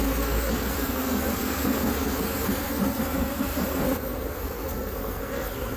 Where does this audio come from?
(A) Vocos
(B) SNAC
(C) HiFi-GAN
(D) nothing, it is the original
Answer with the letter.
B